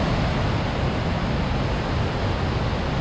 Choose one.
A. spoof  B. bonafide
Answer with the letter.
B